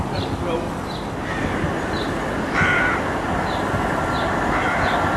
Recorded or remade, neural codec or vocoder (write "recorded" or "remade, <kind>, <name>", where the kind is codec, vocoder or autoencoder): recorded